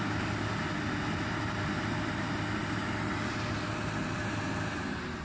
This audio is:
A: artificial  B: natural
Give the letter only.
B